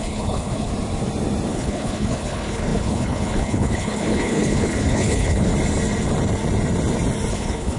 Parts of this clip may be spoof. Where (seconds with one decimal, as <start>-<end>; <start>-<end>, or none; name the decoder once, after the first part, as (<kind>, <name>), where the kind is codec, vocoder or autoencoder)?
0.0-0.7 (codec, HILCodec); 1.5-5.5; 7.3-7.8